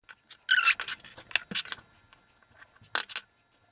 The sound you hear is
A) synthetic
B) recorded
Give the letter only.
B